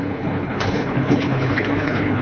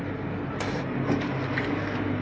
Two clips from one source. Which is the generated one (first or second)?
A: first